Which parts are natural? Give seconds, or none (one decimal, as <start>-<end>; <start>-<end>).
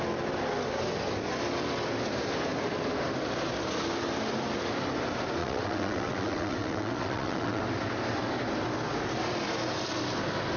0.0-5.4; 7.6-10.6